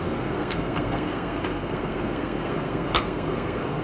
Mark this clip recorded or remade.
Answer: remade